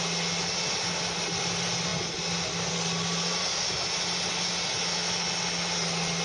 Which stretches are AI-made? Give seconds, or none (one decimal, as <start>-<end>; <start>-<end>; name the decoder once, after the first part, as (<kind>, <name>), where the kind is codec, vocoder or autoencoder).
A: none